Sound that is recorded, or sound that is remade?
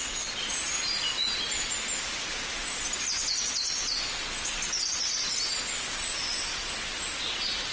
recorded